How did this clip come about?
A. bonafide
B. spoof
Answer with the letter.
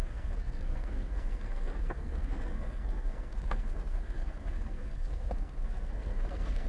B